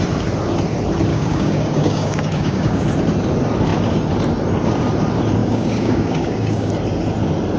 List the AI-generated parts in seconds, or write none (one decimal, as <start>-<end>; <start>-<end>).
1.1-2.8; 5.4-6.7